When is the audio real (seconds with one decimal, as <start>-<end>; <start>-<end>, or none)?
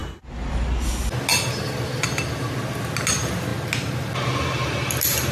0.0-5.3